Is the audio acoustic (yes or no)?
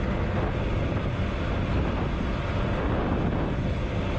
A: yes